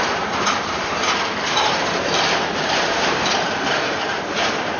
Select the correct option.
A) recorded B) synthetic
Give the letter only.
B